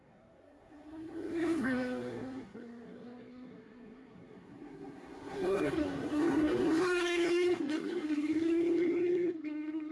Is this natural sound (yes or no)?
no